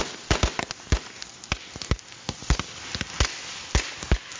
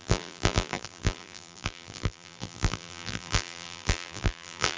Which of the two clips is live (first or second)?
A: first